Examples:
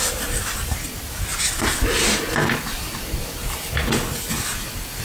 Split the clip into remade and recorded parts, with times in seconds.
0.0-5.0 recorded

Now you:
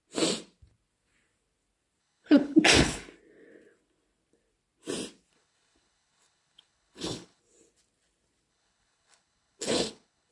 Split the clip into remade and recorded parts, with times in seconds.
0.0-2.0 recorded; 2.0-3.0 remade; 3.0-5.3 recorded; 5.3-7.4 remade; 7.4-8.5 recorded; 8.5-10.3 remade

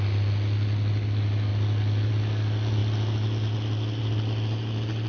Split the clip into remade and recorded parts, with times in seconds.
0.0-5.1 recorded